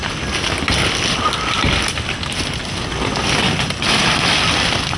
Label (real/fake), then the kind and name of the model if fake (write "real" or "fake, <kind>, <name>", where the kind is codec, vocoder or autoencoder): real